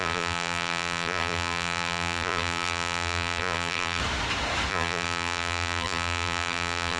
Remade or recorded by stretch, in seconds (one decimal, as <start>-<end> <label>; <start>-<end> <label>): 0.0-4.0 remade; 4.0-4.7 recorded; 4.7-7.0 remade